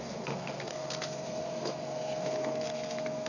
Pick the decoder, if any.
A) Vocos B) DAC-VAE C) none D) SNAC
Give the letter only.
D